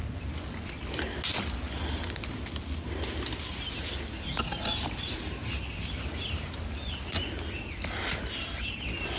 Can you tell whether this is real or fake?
real